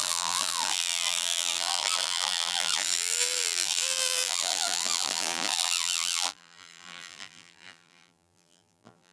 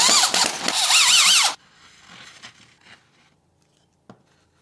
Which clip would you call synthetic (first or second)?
first